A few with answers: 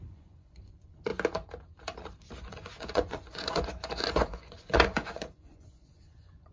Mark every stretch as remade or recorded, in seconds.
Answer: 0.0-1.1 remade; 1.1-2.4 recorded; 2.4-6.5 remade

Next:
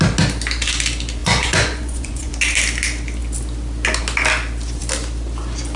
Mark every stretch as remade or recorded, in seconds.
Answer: 0.0-1.2 recorded; 1.2-2.3 remade; 2.3-5.8 recorded